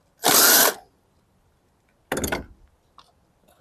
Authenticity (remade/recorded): recorded